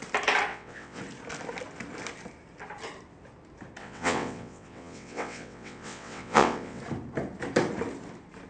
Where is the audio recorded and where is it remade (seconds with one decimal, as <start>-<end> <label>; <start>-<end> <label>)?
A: 0.0-0.5 recorded; 0.5-1.0 remade; 1.0-3.8 recorded; 3.8-6.8 remade; 6.8-8.5 recorded